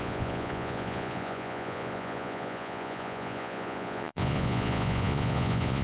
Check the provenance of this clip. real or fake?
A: fake